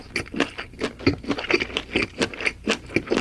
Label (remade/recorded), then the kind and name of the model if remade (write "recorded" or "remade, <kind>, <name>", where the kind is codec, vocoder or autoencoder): recorded